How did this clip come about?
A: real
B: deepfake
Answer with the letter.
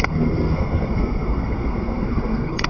B